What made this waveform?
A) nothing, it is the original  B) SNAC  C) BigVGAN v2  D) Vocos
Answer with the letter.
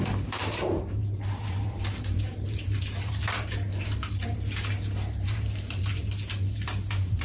C